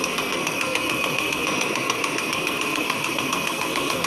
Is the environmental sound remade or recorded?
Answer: remade